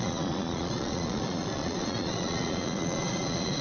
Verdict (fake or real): fake